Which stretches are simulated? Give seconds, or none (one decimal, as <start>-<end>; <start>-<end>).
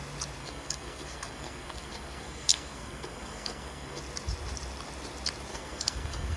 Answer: 0.4-4.0; 5.5-6.4